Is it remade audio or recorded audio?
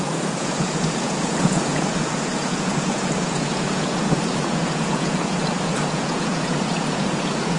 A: remade